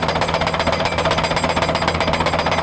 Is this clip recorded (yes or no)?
yes